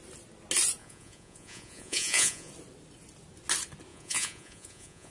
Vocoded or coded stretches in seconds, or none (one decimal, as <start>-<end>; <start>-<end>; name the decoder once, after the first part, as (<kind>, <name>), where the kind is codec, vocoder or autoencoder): 0.8-2.5 (vocoder, Vocos); 3.9-5.1